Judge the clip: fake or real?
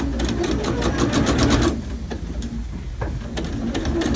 real